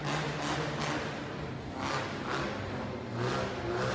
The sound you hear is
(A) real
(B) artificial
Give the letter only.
A